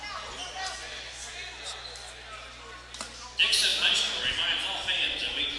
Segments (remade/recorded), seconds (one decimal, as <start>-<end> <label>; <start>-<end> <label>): 0.0-5.6 recorded